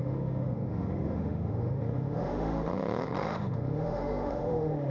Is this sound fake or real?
fake